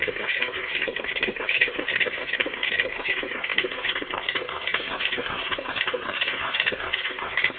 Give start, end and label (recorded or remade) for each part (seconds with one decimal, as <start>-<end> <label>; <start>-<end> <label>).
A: 0.0-7.6 remade